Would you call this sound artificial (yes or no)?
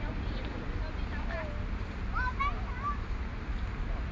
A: no